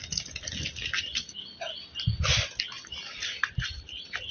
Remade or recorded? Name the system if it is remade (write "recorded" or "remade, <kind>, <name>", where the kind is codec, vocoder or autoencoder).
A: recorded